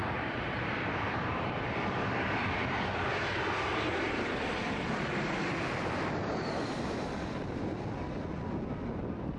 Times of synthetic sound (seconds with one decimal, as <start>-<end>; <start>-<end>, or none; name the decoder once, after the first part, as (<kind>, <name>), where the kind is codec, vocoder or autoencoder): 0.0-9.4 (vocoder, BigVGAN v2)